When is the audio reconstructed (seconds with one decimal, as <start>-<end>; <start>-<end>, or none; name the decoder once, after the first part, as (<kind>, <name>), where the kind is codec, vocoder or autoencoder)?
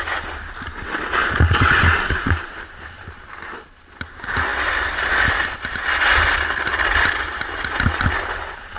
none